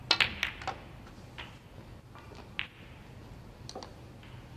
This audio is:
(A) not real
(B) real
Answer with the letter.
B